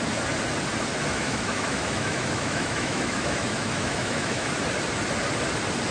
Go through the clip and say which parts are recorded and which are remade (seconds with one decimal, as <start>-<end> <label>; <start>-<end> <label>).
0.0-1.1 recorded; 1.1-4.5 remade; 4.5-5.9 recorded